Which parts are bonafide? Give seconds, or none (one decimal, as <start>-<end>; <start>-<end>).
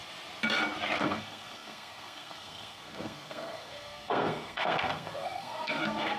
0.0-1.0